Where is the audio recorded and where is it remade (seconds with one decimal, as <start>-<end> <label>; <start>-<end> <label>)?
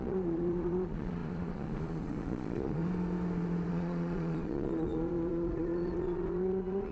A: 0.0-2.8 remade; 2.8-3.7 recorded; 3.7-6.9 remade